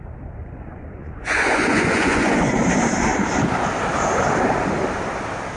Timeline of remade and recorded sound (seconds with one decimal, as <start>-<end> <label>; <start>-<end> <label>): 0.0-0.4 recorded; 0.4-2.5 remade; 2.5-5.6 recorded